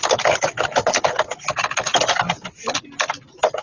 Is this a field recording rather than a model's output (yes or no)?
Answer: yes